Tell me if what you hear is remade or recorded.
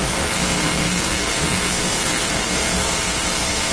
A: remade